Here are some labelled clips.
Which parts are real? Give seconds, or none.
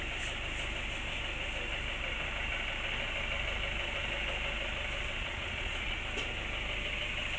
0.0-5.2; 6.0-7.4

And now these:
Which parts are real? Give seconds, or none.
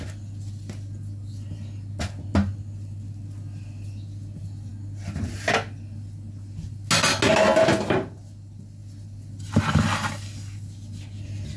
0.0-11.6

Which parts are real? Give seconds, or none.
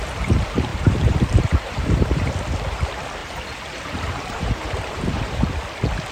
0.0-0.7; 2.3-3.2; 5.6-6.1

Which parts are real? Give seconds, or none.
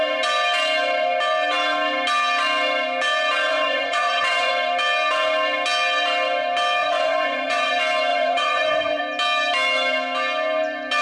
0.0-3.5; 4.5-6.8; 7.7-8.1; 9.0-11.0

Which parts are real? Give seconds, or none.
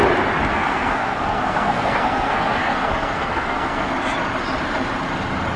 0.0-0.5; 3.9-5.6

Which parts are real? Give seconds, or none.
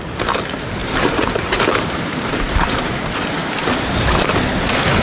0.0-0.8; 3.3-5.0